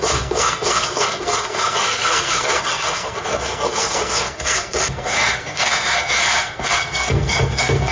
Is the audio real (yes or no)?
no